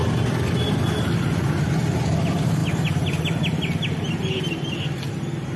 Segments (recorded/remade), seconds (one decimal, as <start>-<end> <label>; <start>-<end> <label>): 0.0-5.6 recorded

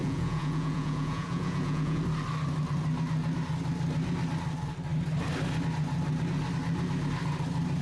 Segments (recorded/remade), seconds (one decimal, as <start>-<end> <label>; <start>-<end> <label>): 0.0-2.0 remade; 2.0-7.8 recorded

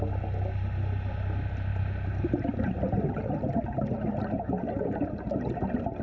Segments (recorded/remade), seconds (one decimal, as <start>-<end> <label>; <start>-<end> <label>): 0.0-1.7 recorded; 1.7-5.3 remade; 5.3-6.0 recorded